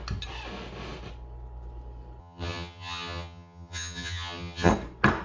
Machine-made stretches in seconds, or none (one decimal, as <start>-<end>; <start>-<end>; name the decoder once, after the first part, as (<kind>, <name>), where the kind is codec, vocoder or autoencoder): 2.2-4.7 (vocoder, HiFi-GAN)